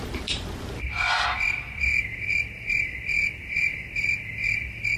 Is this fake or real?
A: real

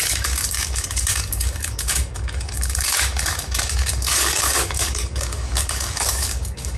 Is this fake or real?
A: fake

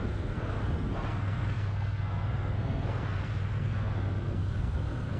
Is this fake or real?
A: fake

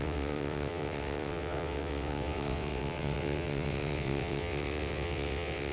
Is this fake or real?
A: fake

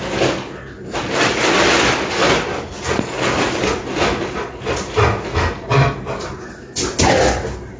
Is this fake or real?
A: real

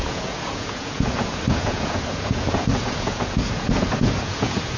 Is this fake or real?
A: fake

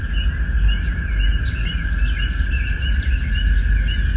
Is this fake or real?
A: real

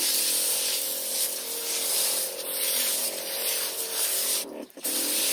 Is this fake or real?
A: fake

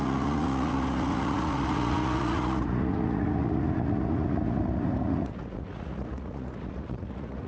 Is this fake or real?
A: fake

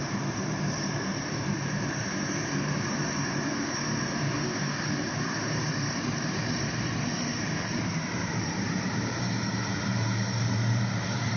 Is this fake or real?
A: fake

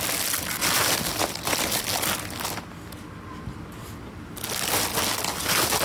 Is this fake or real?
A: real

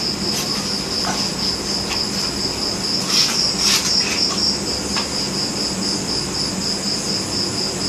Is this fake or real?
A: real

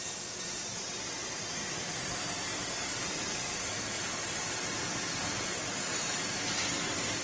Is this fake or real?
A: fake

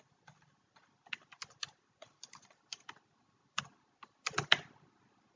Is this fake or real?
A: real